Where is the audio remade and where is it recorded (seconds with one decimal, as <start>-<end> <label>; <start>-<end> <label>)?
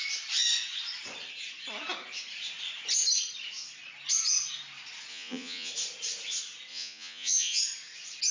0.0-5.1 recorded; 5.1-5.7 remade; 5.7-6.7 recorded; 6.7-7.6 remade; 7.6-8.3 recorded